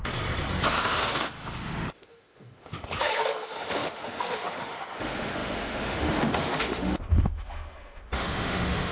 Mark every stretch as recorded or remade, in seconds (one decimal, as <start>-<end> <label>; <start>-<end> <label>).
0.0-0.7 recorded; 0.7-8.9 remade